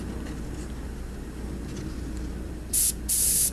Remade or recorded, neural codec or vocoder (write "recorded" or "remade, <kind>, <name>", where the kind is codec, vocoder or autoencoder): remade, vocoder, BigVGAN v2